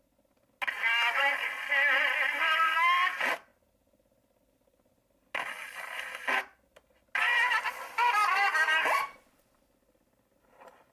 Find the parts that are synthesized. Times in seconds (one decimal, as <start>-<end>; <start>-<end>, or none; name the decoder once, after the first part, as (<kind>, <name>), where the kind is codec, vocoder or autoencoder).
8.4-10.9 (vocoder, BigVGAN v2)